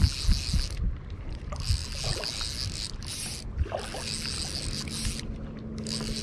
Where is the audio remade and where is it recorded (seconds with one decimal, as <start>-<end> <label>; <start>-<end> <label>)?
0.0-6.2 recorded